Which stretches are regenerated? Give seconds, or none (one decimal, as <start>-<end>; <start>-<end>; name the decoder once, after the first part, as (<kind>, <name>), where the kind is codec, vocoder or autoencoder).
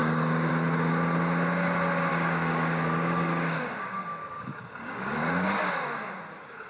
0.0-0.5 (codec, DAC); 2.1-6.1